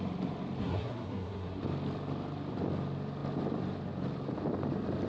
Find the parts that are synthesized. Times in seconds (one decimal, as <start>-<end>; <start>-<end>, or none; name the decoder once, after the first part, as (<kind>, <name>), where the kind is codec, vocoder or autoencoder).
0.6-1.6 (codec, SNAC)